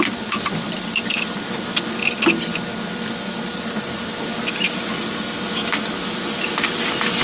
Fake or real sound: real